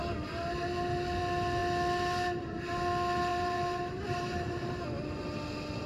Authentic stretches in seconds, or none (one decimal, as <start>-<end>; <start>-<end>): 0.0-3.3; 4.8-5.9